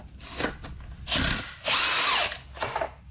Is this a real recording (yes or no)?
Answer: yes